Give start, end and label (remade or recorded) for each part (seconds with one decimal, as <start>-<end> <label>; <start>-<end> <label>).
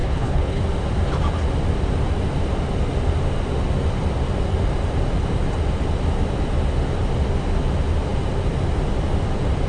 0.0-0.6 remade; 0.6-9.7 recorded